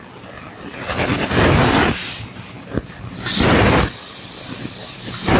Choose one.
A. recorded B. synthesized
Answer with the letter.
A